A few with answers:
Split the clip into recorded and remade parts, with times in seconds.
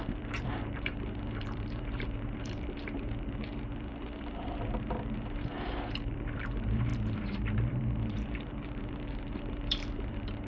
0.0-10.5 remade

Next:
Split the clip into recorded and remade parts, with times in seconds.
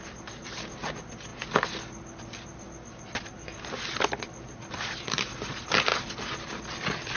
0.0-7.2 recorded